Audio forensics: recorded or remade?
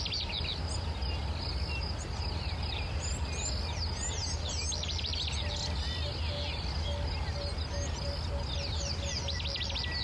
recorded